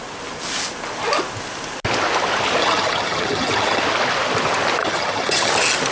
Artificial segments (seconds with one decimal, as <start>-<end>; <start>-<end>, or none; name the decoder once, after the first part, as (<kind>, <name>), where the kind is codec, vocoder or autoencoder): 2.6-3.8 (vocoder, HiFi-GAN); 4.8-5.5